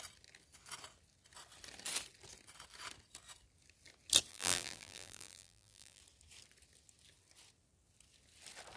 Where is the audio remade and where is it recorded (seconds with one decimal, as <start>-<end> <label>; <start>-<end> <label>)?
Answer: 0.0-4.3 recorded; 4.3-6.0 remade; 6.0-8.8 recorded